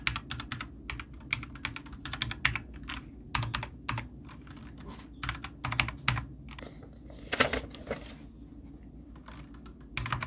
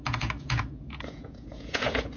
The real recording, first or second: first